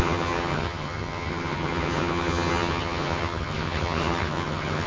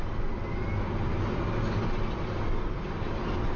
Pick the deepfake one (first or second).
first